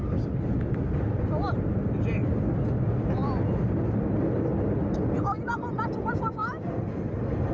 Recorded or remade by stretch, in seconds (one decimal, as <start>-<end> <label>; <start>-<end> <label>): 0.0-7.5 recorded